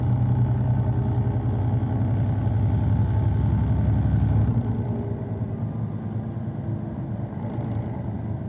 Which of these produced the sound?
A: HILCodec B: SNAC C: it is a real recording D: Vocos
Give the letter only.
C